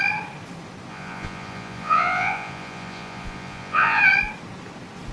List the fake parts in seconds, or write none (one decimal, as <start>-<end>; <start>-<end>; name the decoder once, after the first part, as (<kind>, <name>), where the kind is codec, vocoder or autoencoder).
0.9-4.0 (vocoder, Vocos)